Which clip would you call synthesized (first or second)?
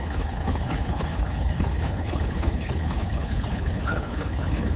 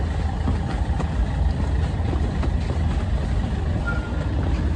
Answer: first